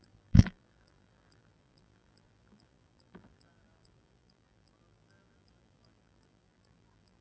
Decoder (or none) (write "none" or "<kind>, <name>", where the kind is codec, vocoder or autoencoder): vocoder, BigVGAN v2